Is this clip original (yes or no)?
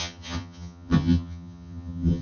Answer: no